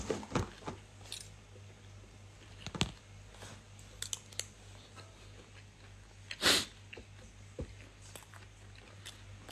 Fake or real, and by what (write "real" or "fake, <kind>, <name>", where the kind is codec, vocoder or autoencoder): real